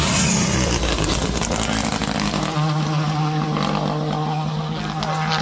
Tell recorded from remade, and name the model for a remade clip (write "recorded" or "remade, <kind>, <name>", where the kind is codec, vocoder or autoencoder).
recorded